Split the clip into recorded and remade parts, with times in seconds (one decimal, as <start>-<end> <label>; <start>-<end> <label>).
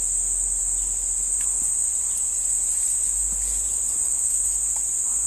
0.0-5.3 recorded